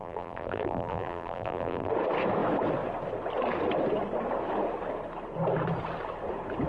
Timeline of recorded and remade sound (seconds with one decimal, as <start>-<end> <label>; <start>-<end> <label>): 0.0-1.9 remade; 1.9-6.7 recorded